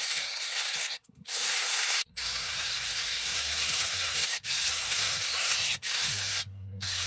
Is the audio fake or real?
fake